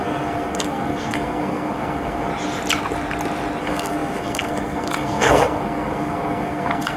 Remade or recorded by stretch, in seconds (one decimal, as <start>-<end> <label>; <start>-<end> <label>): 0.0-2.3 remade; 2.3-3.6 recorded; 3.6-7.0 remade